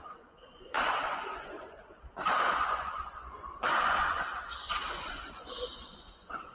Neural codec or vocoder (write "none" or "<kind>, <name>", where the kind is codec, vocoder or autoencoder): vocoder, Vocos